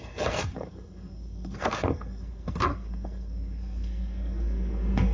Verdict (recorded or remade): remade